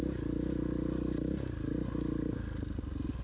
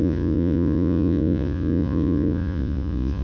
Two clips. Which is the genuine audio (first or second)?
first